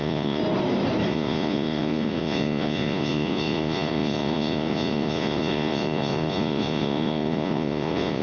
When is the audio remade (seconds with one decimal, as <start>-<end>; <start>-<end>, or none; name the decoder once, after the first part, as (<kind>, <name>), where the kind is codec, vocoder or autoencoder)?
0.0-0.4 (vocoder, Vocos); 1.1-8.2